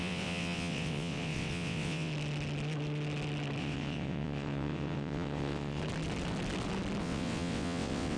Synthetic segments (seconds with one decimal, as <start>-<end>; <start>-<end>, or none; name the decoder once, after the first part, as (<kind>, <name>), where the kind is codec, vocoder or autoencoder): 0.0-2.1 (vocoder, WaveNeXt); 3.6-5.8; 7.0-8.2